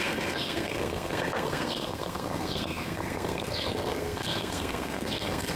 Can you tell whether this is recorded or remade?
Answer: remade